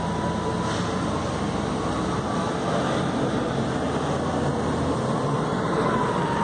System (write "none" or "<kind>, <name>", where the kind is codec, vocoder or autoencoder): none